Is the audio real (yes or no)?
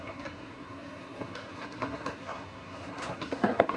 no